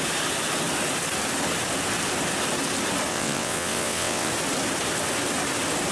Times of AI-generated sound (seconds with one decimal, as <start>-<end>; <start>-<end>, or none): 3.1-4.3